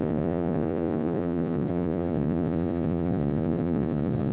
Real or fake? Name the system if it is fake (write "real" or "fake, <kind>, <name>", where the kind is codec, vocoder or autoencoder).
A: fake, vocoder, Vocos